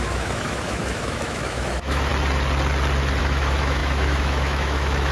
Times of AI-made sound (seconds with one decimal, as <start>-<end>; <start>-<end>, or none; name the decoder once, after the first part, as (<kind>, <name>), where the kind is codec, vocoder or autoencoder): 0.0-2.1 (autoencoder, DAC-VAE); 3.2-5.1